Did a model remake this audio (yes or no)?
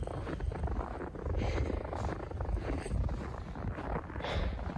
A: no